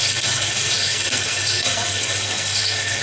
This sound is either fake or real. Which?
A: fake